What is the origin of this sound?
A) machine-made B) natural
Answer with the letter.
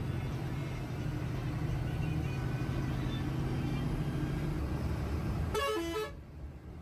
B